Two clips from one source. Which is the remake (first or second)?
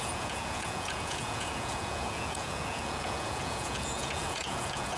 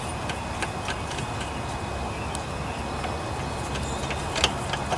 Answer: first